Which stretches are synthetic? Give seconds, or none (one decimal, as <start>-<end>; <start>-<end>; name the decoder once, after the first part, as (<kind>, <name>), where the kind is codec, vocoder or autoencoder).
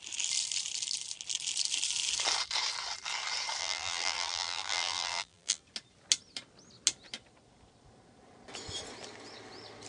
3.6-5.6 (vocoder, BigVGAN v2)